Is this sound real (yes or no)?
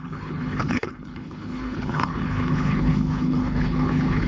no